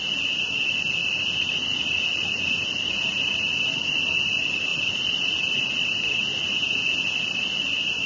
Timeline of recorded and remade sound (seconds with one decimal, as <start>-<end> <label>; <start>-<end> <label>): 0.0-8.1 recorded